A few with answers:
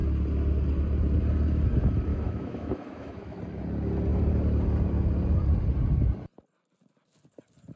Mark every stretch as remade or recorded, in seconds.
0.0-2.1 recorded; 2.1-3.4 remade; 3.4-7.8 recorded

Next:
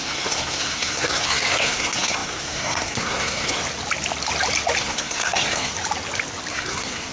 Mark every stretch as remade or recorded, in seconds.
0.0-3.6 remade; 3.6-4.8 recorded; 4.8-5.7 remade; 5.7-6.5 recorded; 6.5-7.1 remade

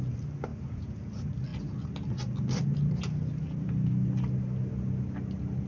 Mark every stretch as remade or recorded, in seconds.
0.0-0.5 recorded; 0.5-1.1 remade; 1.1-5.7 recorded

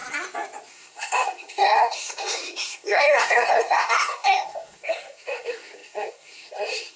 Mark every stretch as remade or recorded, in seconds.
0.0-0.7 recorded; 0.7-7.0 remade

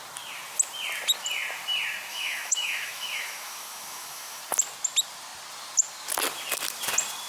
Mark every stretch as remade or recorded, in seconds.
0.0-2.1 recorded; 2.1-4.4 remade; 4.4-7.3 recorded

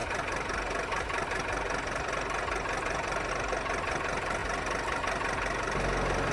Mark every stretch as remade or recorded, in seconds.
0.0-6.3 recorded